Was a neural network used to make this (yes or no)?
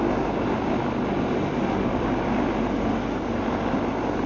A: no